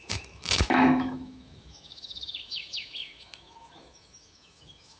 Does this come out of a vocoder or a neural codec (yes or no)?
yes